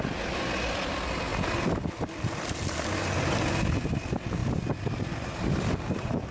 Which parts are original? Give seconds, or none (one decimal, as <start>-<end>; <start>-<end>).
0.0-1.3; 3.0-4.4